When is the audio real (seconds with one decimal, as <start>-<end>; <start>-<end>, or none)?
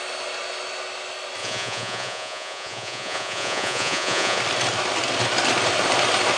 0.0-1.4; 4.4-6.4